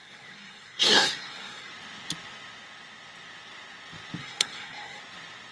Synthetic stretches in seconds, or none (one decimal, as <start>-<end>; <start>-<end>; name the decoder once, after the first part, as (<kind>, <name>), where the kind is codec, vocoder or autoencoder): 0.0-1.7 (codec, SNAC); 4.2-5.0